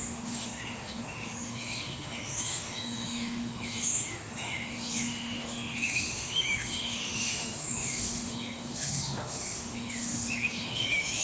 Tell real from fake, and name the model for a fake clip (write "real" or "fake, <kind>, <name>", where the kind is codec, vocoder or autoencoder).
fake, autoencoder, DAC-VAE